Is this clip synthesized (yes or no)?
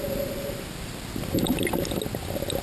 no